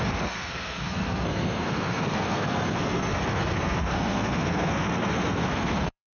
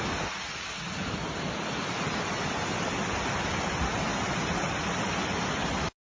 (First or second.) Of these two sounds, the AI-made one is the first